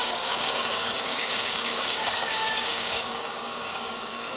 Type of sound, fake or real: fake